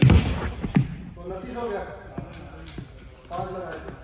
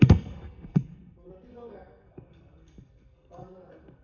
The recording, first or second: first